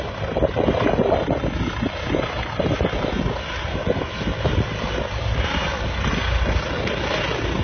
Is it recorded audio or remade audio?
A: recorded